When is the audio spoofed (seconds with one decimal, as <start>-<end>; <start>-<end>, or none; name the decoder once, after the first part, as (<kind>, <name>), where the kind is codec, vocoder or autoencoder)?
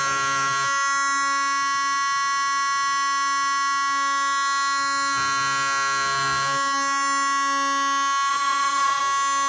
8.3-9.0 (vocoder, Vocos)